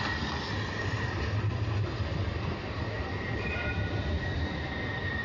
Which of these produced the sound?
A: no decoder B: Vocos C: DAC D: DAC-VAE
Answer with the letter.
A